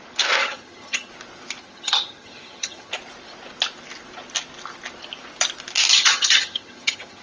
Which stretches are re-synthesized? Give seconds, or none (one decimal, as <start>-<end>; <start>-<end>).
0.4-1.1; 1.6-2.9; 5.9-7.2

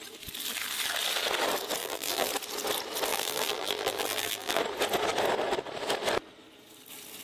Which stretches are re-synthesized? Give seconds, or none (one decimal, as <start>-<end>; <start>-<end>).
1.8-2.3; 3.1-4.6

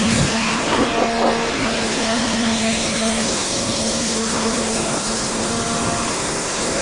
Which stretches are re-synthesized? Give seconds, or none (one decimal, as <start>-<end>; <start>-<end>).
0.0-0.9; 1.5-5.5; 6.1-6.8

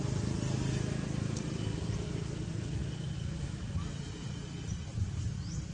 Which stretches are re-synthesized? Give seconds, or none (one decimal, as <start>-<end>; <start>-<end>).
none

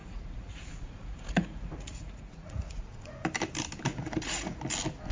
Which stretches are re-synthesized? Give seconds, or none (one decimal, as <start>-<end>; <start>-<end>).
0.0-3.1; 3.9-4.6

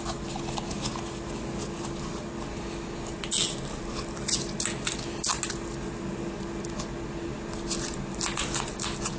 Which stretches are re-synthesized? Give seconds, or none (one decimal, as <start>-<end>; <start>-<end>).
none

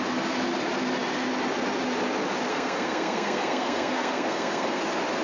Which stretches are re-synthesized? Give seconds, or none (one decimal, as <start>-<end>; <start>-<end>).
2.5-4.8